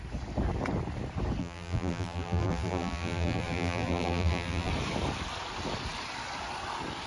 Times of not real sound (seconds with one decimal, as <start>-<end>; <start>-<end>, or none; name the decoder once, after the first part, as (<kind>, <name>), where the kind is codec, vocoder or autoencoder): 1.4-4.7 (vocoder, BigVGAN v2)